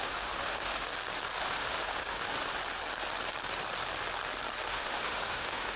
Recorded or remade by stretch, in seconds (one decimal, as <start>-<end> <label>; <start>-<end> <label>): 0.0-0.9 remade; 0.9-1.4 recorded; 1.4-2.6 remade; 2.6-4.7 recorded; 4.7-5.8 remade

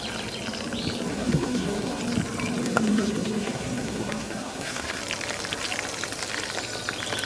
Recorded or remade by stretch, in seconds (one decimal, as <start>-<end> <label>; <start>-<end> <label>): 0.0-1.1 recorded; 1.1-2.0 remade; 2.0-2.6 recorded; 2.6-5.0 remade; 5.0-7.3 recorded

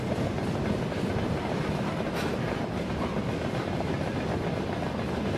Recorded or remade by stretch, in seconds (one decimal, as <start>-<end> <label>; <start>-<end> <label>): 0.0-5.4 recorded

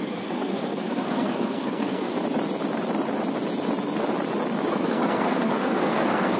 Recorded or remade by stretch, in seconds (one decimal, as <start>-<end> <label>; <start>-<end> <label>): 0.0-2.1 remade; 2.1-4.7 recorded; 4.7-6.4 remade

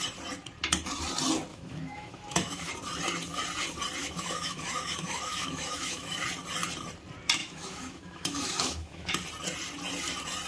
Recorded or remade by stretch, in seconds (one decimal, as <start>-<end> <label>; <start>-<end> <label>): 0.0-1.5 recorded; 1.5-2.7 remade; 2.7-4.0 recorded; 4.0-6.2 remade; 6.2-7.4 recorded; 7.4-9.1 remade; 9.1-10.5 recorded

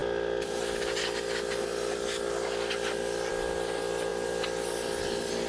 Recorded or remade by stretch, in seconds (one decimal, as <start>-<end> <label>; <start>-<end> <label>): 0.0-5.5 recorded

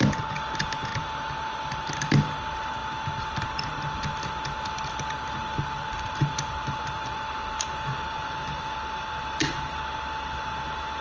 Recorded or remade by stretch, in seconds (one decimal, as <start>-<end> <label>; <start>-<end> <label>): 0.0-0.9 recorded; 0.9-1.9 remade; 1.9-7.9 recorded; 7.9-9.1 remade; 9.1-11.0 recorded